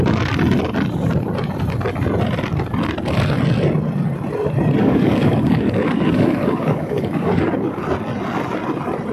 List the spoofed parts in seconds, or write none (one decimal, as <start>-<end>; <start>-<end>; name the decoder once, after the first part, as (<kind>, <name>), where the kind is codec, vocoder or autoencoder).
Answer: 4.8-7.8 (codec, DAC)